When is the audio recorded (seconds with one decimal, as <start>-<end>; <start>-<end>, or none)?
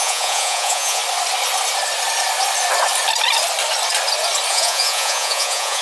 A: 1.0-4.5